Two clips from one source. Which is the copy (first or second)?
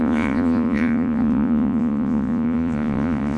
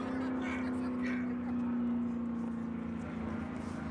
first